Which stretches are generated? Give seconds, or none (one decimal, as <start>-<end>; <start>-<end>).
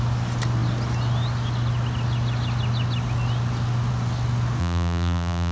4.6-5.5